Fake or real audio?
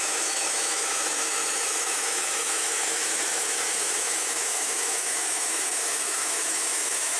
fake